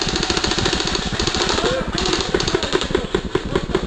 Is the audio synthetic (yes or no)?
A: no